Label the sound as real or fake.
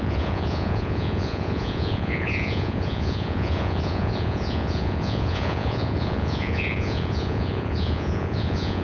fake